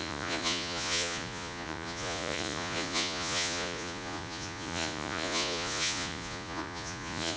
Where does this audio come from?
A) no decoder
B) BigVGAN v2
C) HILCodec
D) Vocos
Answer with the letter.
D